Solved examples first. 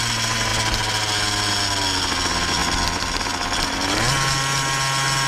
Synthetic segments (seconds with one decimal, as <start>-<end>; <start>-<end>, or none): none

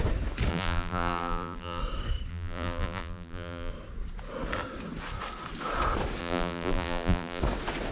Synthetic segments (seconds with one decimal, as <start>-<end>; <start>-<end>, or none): 0.5-1.8; 2.3-3.7; 6.2-7.4

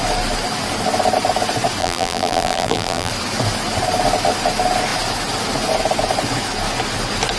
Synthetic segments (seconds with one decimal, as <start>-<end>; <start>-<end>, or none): 1.8-3.1

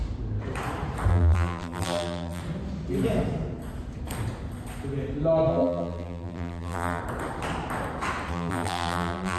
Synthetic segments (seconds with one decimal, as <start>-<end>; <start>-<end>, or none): 1.1-2.4; 5.5-7.0; 8.3-9.4